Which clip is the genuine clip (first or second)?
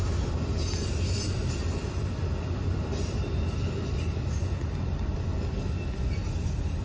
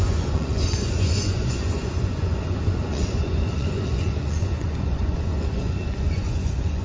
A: first